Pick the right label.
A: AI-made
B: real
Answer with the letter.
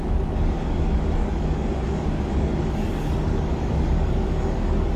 A